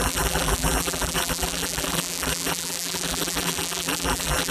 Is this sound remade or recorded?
remade